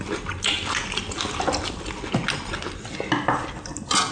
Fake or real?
real